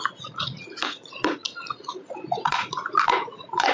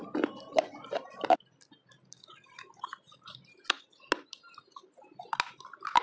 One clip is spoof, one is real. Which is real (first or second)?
second